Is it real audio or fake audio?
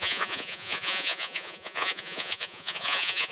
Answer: fake